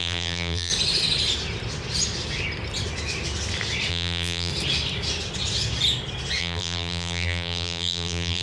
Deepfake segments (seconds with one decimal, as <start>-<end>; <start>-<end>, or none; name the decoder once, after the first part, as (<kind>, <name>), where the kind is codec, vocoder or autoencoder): 0.0-0.7 (vocoder, BigVGAN v2); 3.9-4.5; 6.4-8.4